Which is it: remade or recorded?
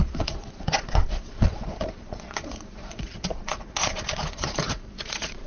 remade